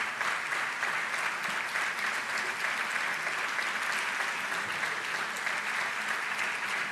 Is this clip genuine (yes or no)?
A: yes